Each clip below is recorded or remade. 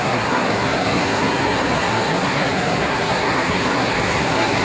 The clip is remade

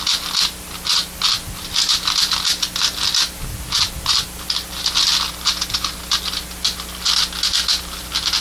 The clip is recorded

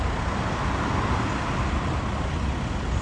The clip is recorded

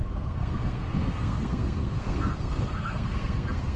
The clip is remade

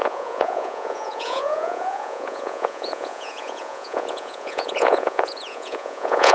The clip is remade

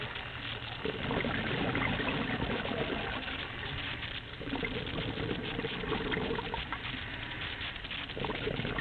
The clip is recorded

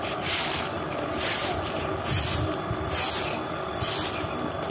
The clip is recorded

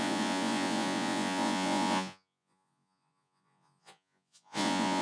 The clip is remade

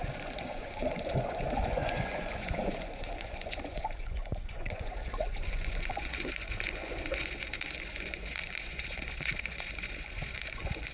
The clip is remade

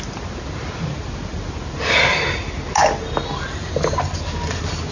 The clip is recorded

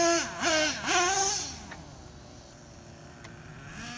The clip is recorded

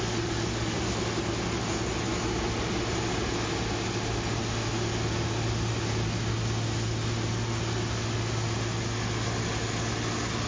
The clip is recorded